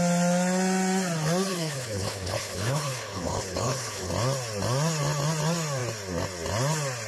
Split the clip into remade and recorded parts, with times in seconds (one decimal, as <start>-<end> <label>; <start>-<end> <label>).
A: 0.0-1.5 recorded; 1.5-4.1 remade; 4.1-7.1 recorded